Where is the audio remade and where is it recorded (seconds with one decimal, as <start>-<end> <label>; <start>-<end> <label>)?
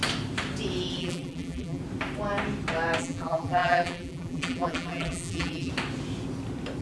0.0-1.0 recorded; 1.0-1.8 remade; 1.8-3.0 recorded; 3.0-5.7 remade; 5.7-6.8 recorded